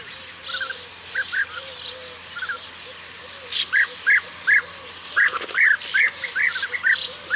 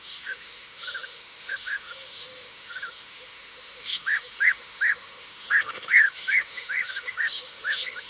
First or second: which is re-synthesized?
second